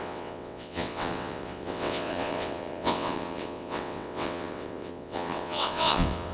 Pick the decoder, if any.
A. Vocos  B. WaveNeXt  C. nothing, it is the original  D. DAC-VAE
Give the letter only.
B